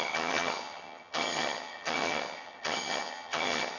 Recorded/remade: remade